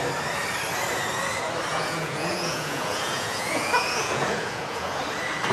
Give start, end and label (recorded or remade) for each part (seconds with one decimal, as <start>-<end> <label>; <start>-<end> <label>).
0.0-1.7 recorded; 1.7-5.0 remade; 5.0-5.5 recorded